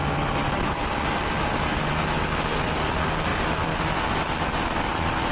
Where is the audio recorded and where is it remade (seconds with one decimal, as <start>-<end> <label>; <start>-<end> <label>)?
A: 0.0-5.3 recorded